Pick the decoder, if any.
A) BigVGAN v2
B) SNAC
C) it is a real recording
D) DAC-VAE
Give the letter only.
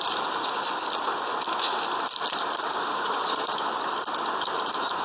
C